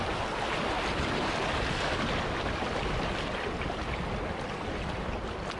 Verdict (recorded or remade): recorded